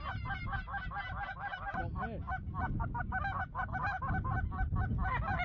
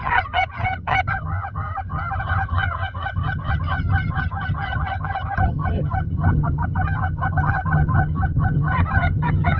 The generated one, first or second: second